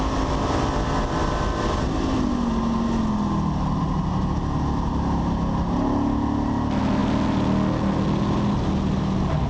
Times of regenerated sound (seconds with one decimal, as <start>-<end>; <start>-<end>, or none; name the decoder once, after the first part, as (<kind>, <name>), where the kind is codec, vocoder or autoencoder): none